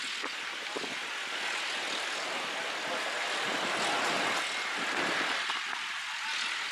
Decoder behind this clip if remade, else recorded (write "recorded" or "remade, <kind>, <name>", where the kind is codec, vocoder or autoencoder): recorded